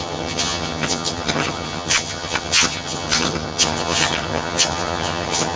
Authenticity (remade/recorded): remade